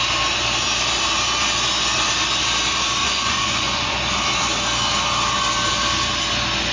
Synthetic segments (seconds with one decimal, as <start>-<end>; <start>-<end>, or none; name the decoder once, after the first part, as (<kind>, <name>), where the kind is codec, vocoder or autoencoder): 3.0-4.1 (vocoder, Vocos)